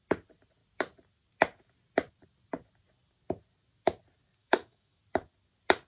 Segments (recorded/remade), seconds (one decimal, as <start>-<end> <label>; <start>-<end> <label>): 0.0-4.4 recorded; 4.4-5.0 remade; 5.0-5.9 recorded